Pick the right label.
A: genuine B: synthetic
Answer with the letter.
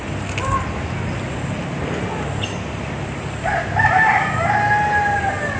A